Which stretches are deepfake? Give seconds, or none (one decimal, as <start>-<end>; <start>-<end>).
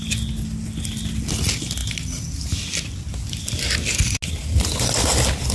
none